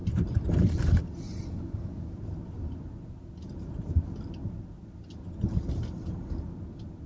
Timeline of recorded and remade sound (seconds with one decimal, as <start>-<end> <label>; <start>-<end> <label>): 0.0-1.0 remade; 1.0-7.1 recorded